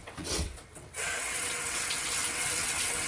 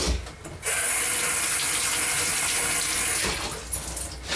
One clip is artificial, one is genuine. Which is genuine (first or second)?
second